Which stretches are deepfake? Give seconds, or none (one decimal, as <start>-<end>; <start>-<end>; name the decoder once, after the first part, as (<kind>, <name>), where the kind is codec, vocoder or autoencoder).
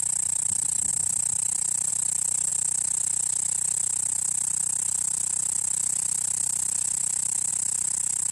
none